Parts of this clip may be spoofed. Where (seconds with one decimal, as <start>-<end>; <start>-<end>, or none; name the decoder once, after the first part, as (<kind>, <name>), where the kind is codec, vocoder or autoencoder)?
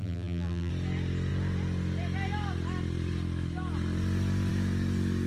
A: 0.0-0.7 (vocoder, BigVGAN v2)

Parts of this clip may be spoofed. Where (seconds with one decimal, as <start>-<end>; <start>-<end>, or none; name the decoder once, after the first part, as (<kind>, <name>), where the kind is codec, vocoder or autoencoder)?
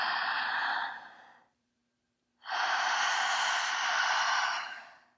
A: 0.0-1.8 (vocoder, BigVGAN v2)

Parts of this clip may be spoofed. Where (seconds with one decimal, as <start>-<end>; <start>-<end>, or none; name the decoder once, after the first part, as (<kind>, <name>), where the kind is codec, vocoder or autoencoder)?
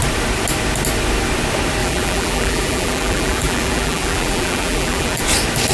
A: 1.8-5.2 (vocoder, BigVGAN v2)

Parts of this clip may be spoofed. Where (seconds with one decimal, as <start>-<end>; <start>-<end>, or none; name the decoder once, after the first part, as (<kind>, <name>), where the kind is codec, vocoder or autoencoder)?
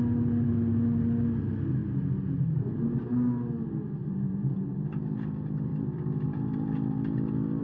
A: 4.0-4.7 (vocoder, BigVGAN v2); 5.7-7.6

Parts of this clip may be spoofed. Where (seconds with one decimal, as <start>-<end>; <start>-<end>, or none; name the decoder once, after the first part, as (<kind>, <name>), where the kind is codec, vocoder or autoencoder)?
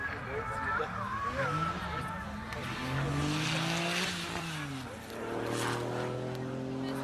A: none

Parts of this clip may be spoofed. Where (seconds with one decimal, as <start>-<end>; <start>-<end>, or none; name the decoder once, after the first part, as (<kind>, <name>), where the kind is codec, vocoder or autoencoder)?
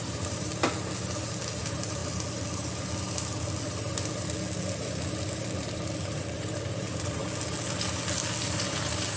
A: 0.0-0.5 (vocoder, BigVGAN v2); 1.6-2.0; 6.2-7.2; 8.4-9.2